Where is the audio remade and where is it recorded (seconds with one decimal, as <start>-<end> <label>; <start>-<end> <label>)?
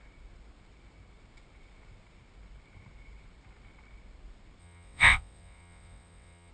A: 0.0-4.6 recorded; 4.6-6.5 remade